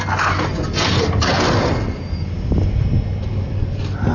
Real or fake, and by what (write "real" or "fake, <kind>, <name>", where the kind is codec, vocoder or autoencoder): real